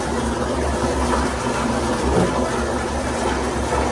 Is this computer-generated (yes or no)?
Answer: no